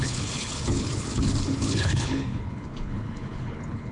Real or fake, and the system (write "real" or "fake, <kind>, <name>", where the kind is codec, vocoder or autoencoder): fake, codec, HILCodec